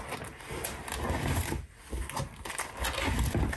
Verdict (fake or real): real